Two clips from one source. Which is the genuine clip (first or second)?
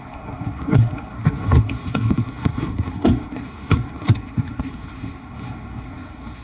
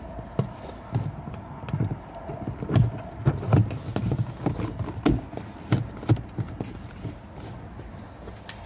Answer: second